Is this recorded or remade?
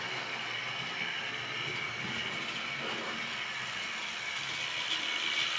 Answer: recorded